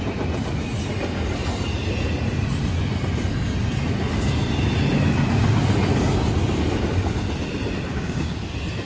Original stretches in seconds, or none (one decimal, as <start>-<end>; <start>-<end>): 0.0-7.9; 8.4-8.9